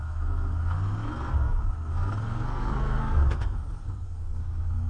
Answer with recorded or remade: remade